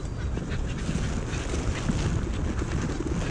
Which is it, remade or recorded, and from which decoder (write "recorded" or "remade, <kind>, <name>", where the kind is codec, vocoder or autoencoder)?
recorded